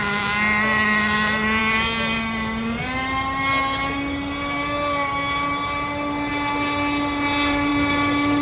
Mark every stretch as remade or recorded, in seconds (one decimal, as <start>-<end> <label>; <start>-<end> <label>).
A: 0.0-8.4 recorded